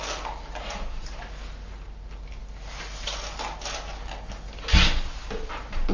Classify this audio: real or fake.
real